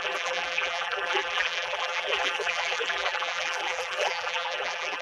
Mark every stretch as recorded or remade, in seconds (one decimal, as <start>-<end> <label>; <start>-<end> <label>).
0.0-5.0 remade